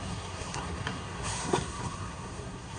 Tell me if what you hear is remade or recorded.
remade